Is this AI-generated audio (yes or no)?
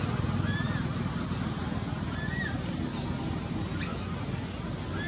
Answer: no